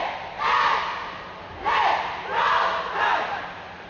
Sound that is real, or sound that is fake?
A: real